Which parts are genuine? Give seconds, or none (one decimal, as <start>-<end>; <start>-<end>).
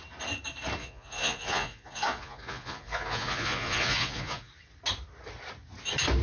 0.0-0.8; 4.5-6.2